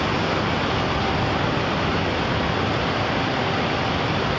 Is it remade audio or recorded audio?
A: recorded